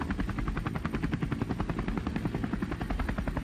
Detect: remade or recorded recorded